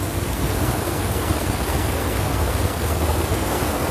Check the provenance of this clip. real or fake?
fake